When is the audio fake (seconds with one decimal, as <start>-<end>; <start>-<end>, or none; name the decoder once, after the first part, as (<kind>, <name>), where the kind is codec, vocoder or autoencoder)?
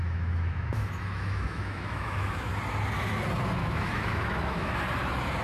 0.0-2.5 (autoencoder, DAC-VAE); 3.6-4.8